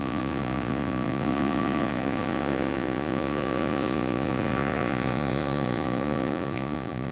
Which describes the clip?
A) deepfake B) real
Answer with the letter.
A